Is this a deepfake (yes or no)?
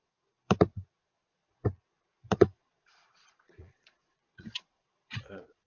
yes